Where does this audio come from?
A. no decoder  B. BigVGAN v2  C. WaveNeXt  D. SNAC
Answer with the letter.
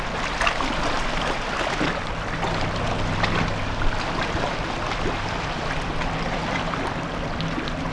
A